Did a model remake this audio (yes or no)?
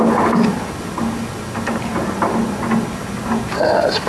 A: no